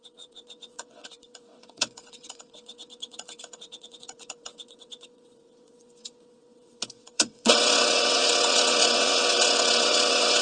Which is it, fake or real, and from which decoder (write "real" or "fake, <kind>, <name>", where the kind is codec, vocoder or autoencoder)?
fake, vocoder, WaveNeXt